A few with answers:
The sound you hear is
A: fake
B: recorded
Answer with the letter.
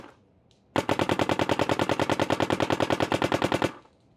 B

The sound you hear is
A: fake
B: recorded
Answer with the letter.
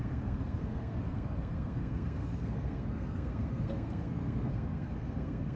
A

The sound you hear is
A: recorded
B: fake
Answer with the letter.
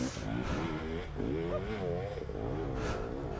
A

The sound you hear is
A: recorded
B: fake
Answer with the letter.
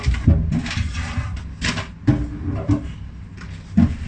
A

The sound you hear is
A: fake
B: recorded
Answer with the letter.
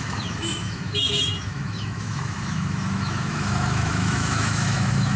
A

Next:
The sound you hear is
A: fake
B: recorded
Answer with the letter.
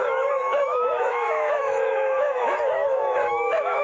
A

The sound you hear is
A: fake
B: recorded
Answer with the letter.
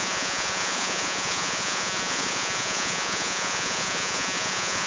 A